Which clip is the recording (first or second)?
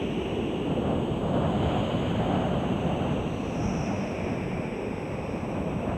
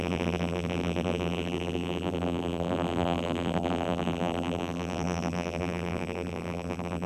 first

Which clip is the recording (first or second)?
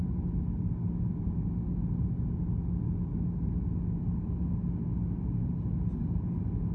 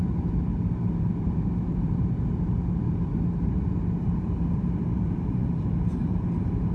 first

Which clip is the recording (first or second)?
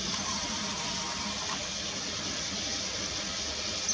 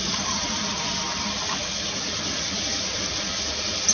first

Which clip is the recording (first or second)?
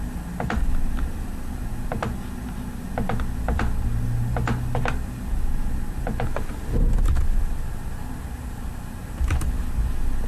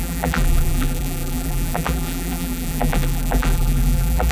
first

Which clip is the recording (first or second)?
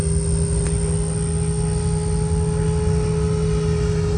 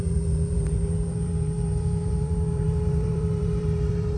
first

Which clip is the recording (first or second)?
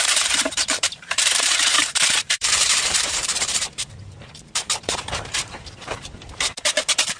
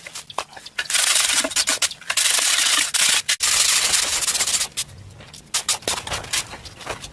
second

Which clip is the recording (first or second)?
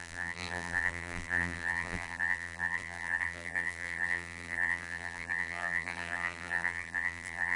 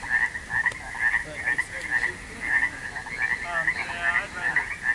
second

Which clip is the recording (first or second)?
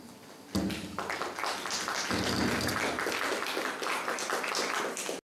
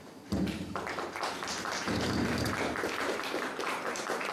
first